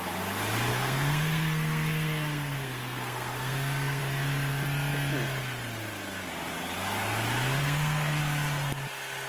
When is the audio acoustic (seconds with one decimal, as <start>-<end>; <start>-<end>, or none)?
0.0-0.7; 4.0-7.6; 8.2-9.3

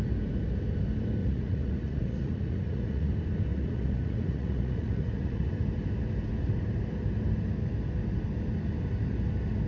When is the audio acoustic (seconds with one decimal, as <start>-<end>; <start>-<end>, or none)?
0.0-1.2; 3.1-3.5; 5.5-9.7

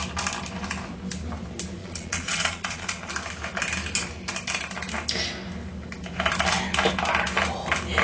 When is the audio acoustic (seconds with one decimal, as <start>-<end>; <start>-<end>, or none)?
0.0-1.8; 3.1-8.0

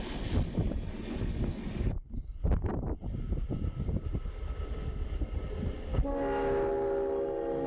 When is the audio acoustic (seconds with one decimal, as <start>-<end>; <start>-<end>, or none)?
0.0-7.7

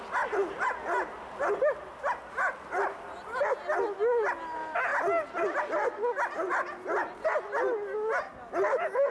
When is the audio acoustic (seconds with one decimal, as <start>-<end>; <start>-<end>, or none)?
0.0-9.1

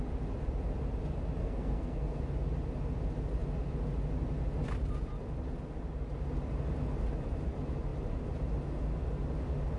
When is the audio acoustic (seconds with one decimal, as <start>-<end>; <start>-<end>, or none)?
0.0-1.4; 2.2-9.8

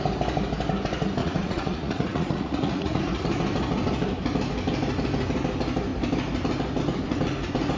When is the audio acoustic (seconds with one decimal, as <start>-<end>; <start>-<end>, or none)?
0.0-1.2; 3.0-7.8

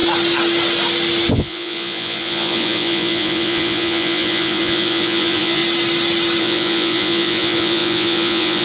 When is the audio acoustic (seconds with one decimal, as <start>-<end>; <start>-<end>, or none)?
0.0-1.3; 5.6-6.4